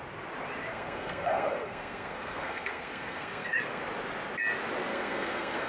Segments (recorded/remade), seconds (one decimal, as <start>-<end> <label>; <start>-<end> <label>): 0.0-0.7 recorded; 0.7-3.8 remade; 3.8-4.9 recorded; 4.9-5.7 remade